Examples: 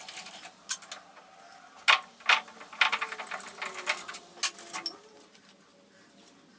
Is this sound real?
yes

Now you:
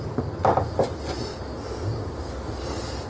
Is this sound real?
yes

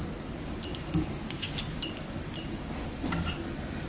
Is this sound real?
yes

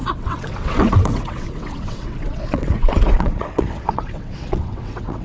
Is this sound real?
no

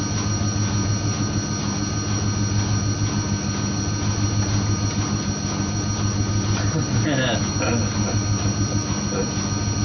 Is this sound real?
yes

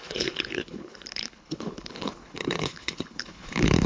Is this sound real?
no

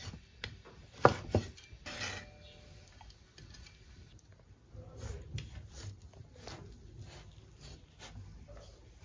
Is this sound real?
yes